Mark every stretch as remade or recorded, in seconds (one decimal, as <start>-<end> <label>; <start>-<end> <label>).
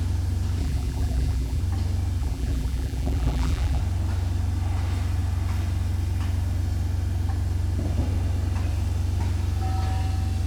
0.0-0.6 recorded; 0.6-1.6 remade; 1.6-2.2 recorded; 2.2-3.8 remade; 3.8-10.5 recorded